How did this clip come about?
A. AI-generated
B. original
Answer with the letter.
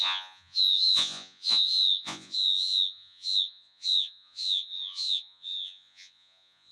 A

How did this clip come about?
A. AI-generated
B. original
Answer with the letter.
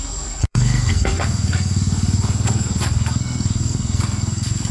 A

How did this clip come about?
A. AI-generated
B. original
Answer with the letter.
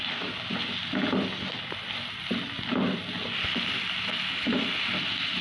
B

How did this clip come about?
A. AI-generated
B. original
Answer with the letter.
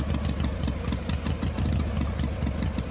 B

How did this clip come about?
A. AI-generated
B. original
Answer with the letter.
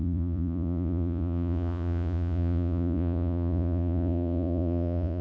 A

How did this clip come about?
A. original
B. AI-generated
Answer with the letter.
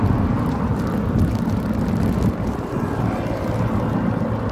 A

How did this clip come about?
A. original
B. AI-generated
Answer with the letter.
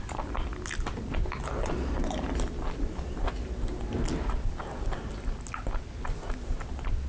A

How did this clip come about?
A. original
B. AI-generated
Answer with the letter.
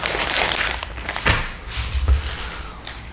A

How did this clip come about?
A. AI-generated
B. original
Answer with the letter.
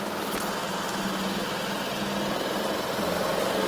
B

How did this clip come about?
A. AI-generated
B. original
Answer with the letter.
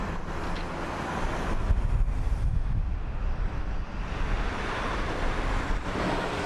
B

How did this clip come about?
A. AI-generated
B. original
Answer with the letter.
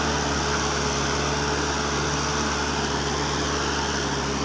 B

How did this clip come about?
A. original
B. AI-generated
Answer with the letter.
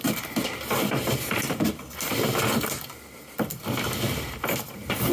A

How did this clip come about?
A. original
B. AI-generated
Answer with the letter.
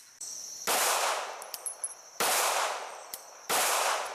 B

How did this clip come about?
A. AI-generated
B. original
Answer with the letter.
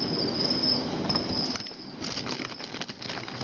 B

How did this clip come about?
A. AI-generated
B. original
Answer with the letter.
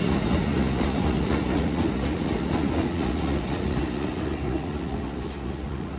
A